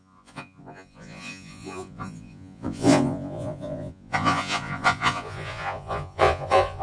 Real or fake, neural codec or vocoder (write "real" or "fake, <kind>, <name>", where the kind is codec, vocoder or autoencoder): fake, vocoder, Vocos